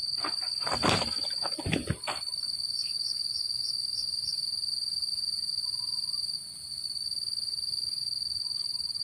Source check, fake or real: real